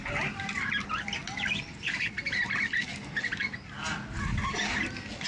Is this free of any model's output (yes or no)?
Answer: yes